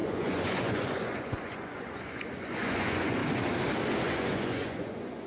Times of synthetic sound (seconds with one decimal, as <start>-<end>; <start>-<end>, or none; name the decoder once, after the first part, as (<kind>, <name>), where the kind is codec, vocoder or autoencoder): 0.0-3.2 (vocoder, Vocos); 4.0-5.3